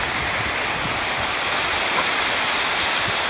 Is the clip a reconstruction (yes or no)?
no